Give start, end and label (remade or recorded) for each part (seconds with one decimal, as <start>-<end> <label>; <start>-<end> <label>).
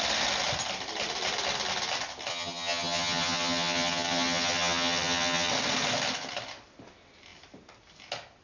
0.0-2.3 recorded; 2.3-5.5 remade; 5.5-8.4 recorded